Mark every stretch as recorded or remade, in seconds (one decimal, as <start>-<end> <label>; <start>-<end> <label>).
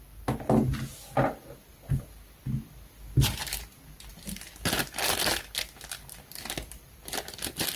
0.0-7.8 recorded